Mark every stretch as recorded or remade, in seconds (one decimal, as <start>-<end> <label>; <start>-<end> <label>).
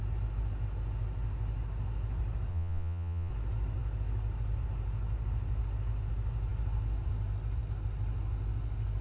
0.0-2.5 recorded; 2.5-3.3 remade; 3.3-9.0 recorded